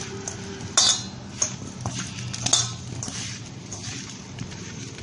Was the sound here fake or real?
real